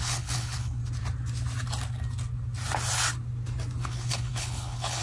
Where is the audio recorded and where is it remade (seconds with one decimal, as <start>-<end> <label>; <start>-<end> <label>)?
0.0-0.8 remade; 0.8-3.8 recorded; 3.8-5.0 remade

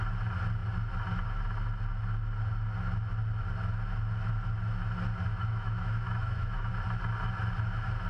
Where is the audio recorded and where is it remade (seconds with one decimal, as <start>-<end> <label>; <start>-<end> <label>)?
0.0-5.3 recorded; 5.3-6.7 remade; 6.7-8.1 recorded

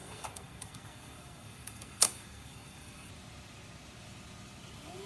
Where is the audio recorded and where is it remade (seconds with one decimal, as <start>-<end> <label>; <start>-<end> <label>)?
0.0-3.1 remade; 3.1-5.1 recorded

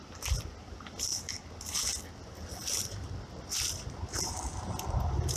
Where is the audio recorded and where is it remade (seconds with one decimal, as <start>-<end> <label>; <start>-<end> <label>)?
0.0-5.4 recorded